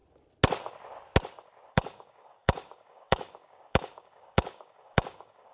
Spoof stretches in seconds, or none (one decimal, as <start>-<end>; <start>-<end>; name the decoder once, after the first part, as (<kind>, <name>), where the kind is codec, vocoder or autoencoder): 1.7-5.5 (codec, DAC)